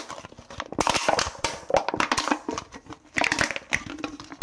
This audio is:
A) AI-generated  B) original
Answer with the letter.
B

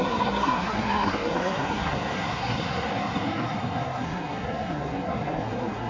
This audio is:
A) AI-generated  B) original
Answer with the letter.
A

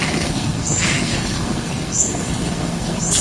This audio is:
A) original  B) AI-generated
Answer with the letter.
B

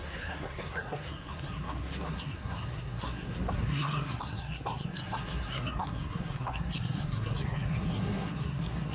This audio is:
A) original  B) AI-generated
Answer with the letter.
B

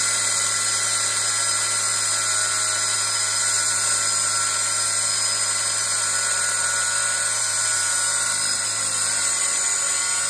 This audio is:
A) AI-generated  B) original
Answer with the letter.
B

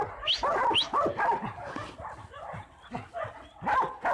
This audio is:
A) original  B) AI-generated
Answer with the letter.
A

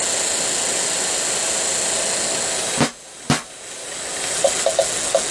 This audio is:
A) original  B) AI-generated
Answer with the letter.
A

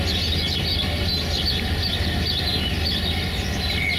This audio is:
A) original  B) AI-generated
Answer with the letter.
A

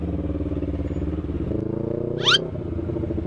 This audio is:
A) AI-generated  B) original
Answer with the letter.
B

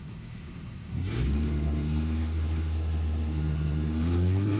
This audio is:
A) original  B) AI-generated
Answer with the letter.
B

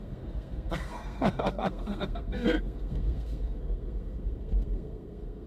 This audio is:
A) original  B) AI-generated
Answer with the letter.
B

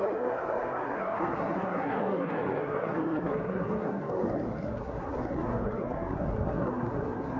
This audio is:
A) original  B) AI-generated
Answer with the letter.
B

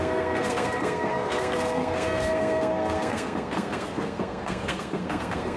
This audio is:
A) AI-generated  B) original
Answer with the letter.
A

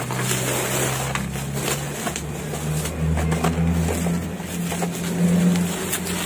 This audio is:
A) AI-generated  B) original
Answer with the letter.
B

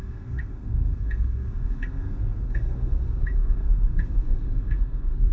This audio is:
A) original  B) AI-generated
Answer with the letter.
B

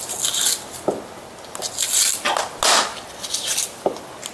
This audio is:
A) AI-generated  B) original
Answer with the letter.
B